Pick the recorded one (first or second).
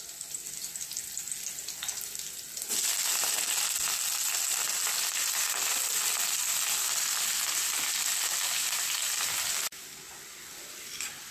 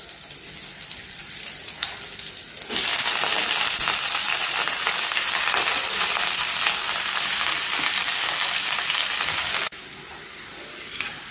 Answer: first